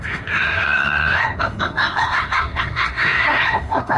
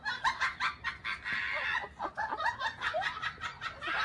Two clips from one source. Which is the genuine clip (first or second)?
second